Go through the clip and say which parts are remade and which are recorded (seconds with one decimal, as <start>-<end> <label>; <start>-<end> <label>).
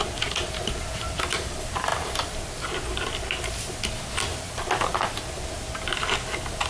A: 0.0-6.7 recorded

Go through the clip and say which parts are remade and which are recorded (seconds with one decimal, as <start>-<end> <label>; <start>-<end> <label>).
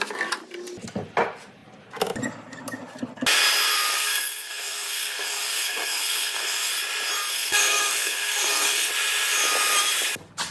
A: 0.0-3.9 recorded; 3.9-6.7 remade; 6.7-7.3 recorded; 7.3-8.9 remade; 8.9-10.5 recorded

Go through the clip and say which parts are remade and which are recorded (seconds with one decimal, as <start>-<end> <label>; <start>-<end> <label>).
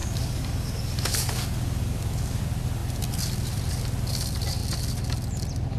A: 0.0-2.4 remade; 2.4-5.8 recorded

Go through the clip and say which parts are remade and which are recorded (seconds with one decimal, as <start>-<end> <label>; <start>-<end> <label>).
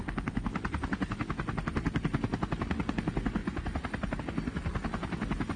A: 0.0-5.6 recorded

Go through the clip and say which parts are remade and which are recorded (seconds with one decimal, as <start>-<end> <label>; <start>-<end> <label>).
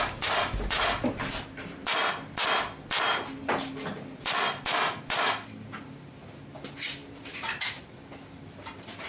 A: 0.0-9.1 recorded